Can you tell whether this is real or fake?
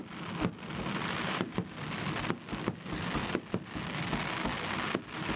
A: real